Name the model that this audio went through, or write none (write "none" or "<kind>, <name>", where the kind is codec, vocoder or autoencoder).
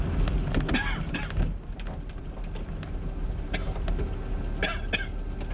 none